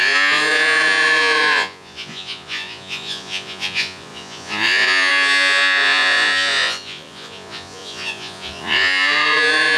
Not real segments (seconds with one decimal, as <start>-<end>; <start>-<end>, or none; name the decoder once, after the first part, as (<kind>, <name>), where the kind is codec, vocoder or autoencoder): 0.0-9.8 (vocoder, Vocos)